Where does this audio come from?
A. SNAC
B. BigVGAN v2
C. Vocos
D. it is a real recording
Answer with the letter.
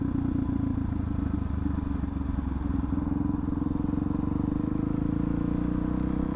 D